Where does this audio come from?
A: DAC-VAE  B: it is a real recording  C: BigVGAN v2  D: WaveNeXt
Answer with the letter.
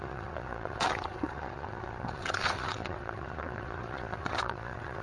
D